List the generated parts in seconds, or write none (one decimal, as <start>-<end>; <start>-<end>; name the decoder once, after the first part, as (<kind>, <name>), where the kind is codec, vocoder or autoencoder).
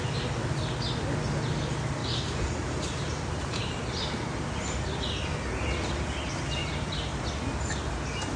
2.0-3.8 (vocoder, BigVGAN v2); 6.6-7.2